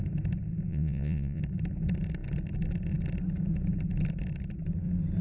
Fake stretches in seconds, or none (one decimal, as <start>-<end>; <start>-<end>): 0.7-1.4